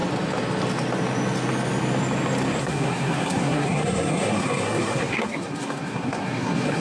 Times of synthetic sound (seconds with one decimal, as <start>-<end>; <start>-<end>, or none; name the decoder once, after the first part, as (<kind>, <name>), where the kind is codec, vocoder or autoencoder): 2.6-6.8 (codec, SNAC)